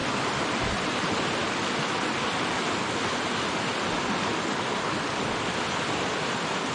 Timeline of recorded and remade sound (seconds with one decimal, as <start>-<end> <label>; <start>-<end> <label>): 0.0-6.7 recorded